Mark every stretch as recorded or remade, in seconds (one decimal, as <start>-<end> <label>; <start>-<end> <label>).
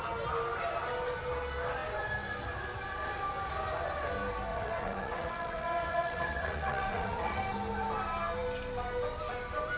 0.0-4.5 recorded; 4.5-7.4 remade; 7.4-9.8 recorded